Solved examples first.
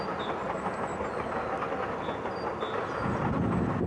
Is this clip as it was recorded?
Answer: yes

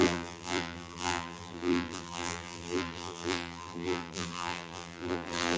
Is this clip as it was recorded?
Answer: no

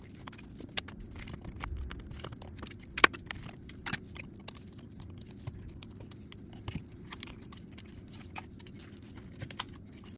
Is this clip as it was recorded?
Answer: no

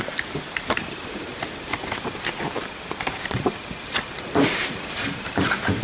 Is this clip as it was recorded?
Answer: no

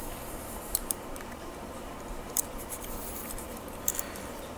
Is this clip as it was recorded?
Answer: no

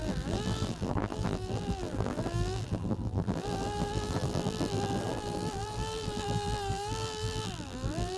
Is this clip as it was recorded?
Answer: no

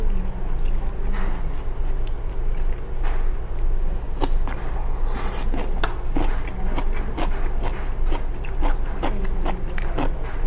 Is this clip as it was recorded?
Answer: yes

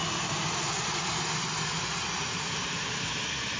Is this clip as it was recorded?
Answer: yes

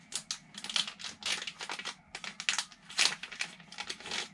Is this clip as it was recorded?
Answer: yes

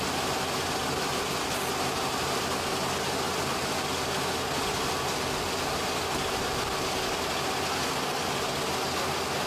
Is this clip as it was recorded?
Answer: yes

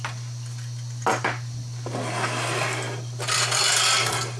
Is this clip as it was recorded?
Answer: yes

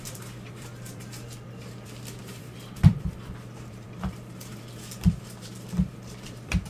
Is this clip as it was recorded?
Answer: no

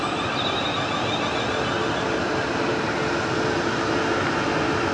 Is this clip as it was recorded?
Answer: yes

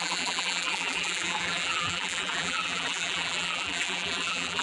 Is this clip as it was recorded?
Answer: no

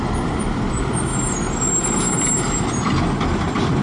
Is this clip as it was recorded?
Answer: yes